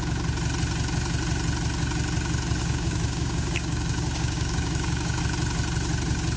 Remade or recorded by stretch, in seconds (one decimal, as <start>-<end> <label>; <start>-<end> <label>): 0.0-2.6 recorded; 2.6-5.2 remade; 5.2-6.4 recorded